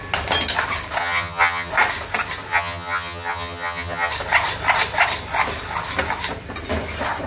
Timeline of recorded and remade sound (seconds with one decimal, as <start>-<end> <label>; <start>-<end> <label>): 0.0-1.0 recorded; 1.0-1.7 remade; 1.7-2.5 recorded; 2.5-4.1 remade; 4.1-7.3 recorded